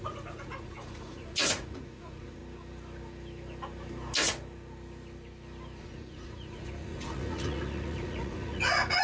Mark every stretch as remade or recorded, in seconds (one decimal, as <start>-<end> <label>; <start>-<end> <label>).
0.0-2.4 remade; 2.4-5.8 recorded; 5.8-9.0 remade